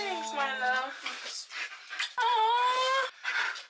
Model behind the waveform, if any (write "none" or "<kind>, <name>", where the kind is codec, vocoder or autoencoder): none